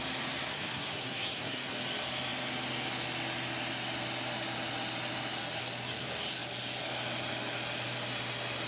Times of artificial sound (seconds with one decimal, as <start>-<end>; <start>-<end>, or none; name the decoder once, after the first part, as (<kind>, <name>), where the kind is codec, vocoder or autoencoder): 0.5-1.7 (codec, SNAC)